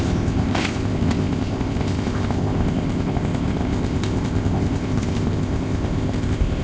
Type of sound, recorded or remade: remade